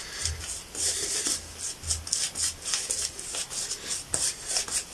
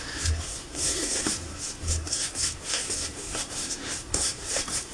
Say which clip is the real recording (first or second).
first